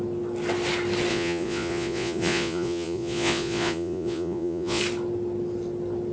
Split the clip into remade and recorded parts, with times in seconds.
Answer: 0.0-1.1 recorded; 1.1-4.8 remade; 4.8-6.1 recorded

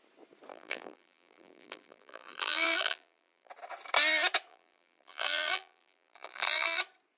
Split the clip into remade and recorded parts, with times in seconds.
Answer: 0.0-0.5 recorded; 0.5-3.5 remade; 3.5-4.5 recorded; 4.5-6.8 remade; 6.8-7.2 recorded

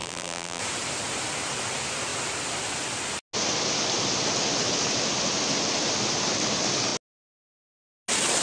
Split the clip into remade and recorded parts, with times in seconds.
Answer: 0.0-0.6 remade; 0.6-8.4 recorded

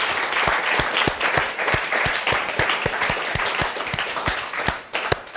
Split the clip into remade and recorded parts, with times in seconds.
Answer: 0.0-1.4 recorded; 1.4-4.6 remade; 4.6-5.4 recorded